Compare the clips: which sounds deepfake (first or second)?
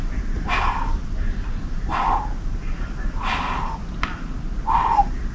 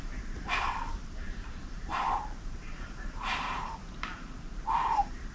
second